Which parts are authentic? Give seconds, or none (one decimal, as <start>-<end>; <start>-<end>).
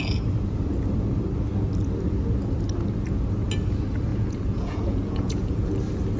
0.0-4.1; 5.7-6.2